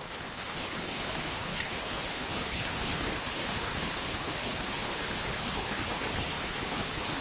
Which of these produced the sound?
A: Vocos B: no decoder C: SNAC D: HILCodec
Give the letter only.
D